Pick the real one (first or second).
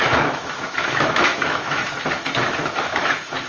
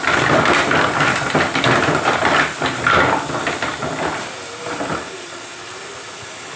second